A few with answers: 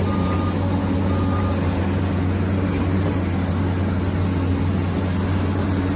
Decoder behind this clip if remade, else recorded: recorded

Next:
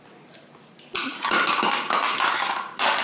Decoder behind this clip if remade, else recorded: recorded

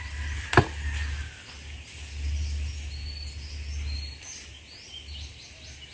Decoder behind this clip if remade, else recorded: recorded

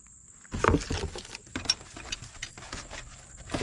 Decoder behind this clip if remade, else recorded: recorded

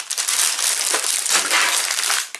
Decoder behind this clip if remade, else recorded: recorded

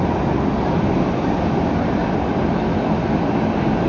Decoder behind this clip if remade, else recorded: recorded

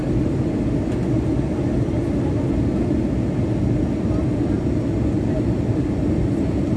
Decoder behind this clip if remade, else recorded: recorded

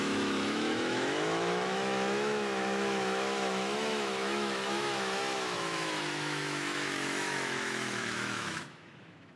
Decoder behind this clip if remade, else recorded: remade, autoencoder, DAC-VAE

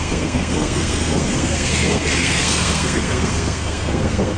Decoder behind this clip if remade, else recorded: remade, codec, SNAC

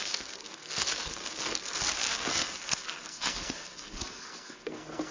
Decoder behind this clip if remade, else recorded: remade, codec, SNAC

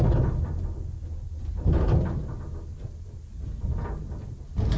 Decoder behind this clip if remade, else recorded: recorded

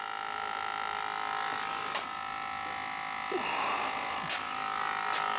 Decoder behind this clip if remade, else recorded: recorded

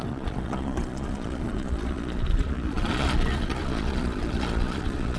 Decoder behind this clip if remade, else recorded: remade, vocoder, Vocos